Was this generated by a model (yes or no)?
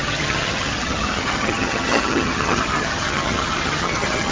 yes